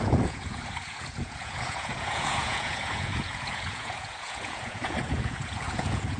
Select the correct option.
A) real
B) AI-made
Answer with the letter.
B